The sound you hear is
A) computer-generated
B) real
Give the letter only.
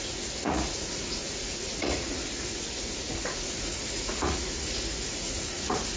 A